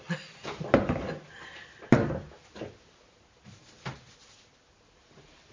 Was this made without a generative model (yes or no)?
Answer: yes